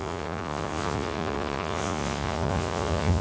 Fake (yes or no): yes